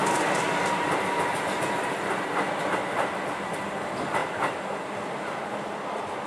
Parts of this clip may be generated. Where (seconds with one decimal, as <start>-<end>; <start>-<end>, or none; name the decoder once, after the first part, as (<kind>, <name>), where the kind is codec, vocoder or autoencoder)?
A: 4.2-5.0 (vocoder, BigVGAN v2)